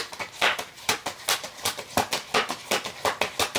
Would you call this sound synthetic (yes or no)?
no